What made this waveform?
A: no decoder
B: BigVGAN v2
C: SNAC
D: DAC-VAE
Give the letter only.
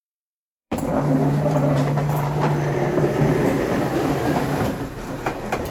B